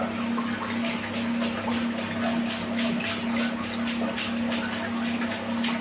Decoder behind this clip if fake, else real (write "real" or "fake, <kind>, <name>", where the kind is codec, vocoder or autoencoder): real